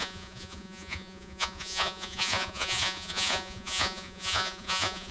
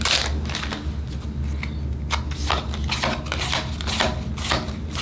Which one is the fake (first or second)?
first